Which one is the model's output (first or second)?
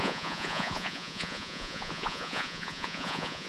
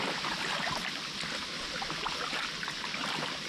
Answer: first